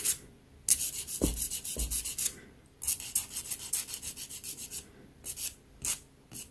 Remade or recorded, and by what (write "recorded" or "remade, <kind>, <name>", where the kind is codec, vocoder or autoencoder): recorded